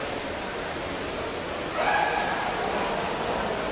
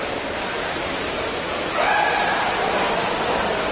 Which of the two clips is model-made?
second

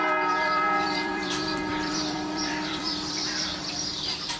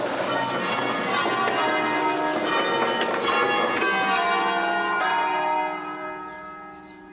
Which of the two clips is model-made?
first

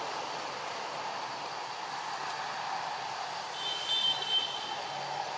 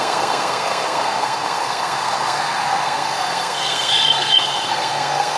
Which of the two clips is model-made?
second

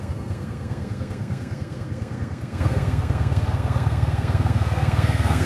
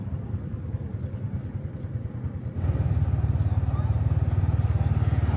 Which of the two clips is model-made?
first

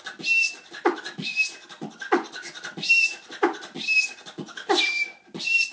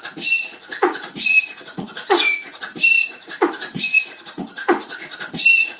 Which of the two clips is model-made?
second